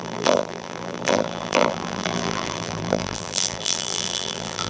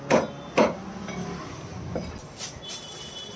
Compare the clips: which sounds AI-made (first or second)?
first